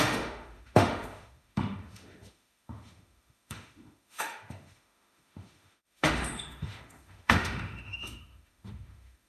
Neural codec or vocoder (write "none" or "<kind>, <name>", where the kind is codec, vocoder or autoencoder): autoencoder, DAC-VAE